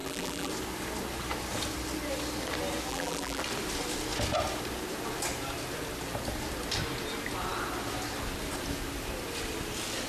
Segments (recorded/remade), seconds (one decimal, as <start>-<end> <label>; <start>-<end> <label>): 0.0-0.5 remade; 0.5-2.9 recorded; 2.9-3.4 remade; 3.4-10.1 recorded